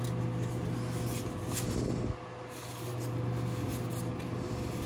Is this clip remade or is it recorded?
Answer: recorded